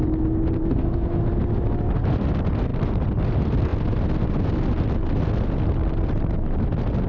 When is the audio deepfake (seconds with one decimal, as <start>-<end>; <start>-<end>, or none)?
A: 0.6-1.2